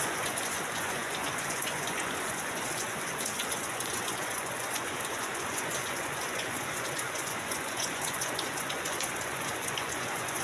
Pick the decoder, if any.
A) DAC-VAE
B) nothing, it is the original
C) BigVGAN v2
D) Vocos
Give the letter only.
D